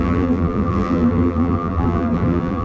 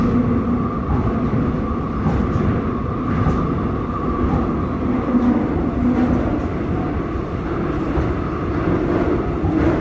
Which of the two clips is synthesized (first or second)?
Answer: first